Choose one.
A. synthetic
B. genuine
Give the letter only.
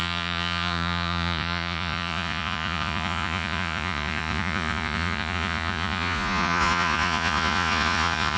A